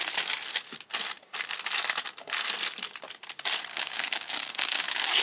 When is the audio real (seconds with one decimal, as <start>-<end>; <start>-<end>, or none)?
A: 0.0-3.7